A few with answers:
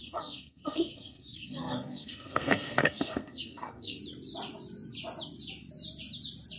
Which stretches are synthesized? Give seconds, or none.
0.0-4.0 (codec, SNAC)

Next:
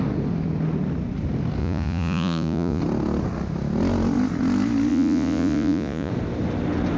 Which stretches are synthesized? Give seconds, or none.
1.6-2.8 (vocoder, Vocos); 4.9-6.1

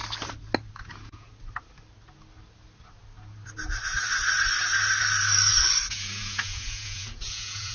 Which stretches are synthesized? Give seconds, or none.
0.8-1.3 (vocoder, Vocos); 5.9-7.7

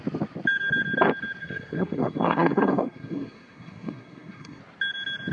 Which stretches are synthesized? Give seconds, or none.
1.4-4.6 (codec, SNAC)

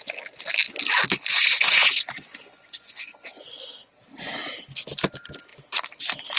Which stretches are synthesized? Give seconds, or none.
1.3-3.9 (vocoder, Vocos)

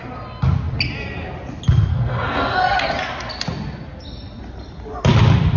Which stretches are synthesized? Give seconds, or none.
1.9-3.0 (codec, SNAC)

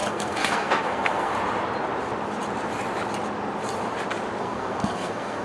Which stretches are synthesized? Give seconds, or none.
0.0-1.3 (codec, SNAC); 4.4-5.4

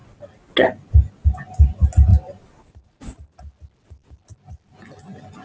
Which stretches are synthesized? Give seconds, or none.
2.1-3.4 (vocoder, BigVGAN v2)